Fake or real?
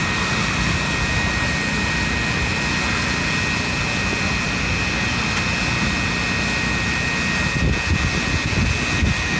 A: real